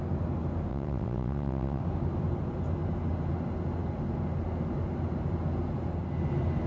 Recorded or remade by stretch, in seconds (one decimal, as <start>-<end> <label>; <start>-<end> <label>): 0.0-0.7 recorded; 0.7-1.8 remade; 1.8-6.7 recorded